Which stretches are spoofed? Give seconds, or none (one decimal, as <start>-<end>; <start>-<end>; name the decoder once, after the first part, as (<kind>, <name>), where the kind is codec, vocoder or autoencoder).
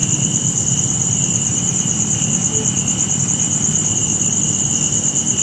none